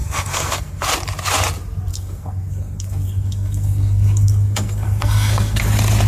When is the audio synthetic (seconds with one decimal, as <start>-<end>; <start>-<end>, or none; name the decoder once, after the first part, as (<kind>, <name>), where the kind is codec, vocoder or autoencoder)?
0.0-0.8 (codec, SNAC); 1.9-5.6